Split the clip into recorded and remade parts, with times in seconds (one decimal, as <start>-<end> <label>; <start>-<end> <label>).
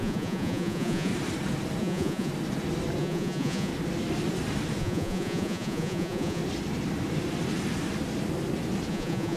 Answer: 0.0-1.1 remade; 1.1-1.8 recorded; 1.8-2.3 remade; 2.3-3.0 recorded; 3.0-3.7 remade; 3.7-4.8 recorded; 4.8-6.4 remade; 6.4-8.9 recorded; 8.9-9.4 remade